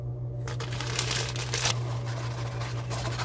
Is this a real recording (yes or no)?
yes